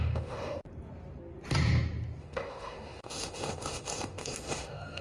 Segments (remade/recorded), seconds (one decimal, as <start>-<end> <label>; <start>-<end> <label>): 0.0-0.6 remade; 0.6-2.2 recorded; 2.2-5.0 remade